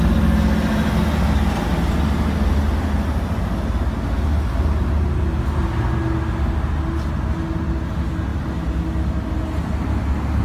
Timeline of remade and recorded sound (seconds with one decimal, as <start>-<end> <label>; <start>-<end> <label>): 0.0-10.4 recorded